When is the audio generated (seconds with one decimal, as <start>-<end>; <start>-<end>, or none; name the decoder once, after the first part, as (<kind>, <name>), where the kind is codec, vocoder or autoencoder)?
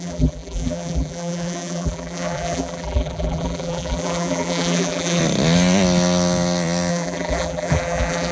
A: 0.0-5.2 (vocoder, BigVGAN v2); 6.9-8.3